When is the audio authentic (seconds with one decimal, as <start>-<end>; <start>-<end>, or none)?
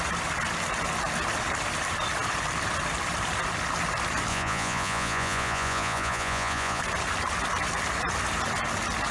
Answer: 0.0-4.3; 6.8-9.1